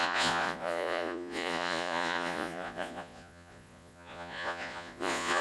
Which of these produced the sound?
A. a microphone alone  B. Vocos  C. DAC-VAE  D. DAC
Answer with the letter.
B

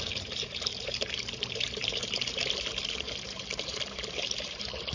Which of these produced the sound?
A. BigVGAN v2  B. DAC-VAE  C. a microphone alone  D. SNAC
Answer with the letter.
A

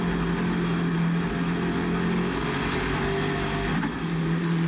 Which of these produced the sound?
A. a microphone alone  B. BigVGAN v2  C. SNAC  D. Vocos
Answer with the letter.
A